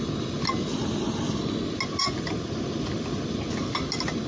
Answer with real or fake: real